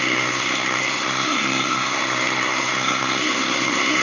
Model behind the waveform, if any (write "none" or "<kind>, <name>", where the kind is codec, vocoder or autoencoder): codec, SNAC